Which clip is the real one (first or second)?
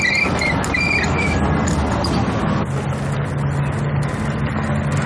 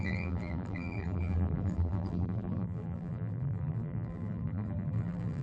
first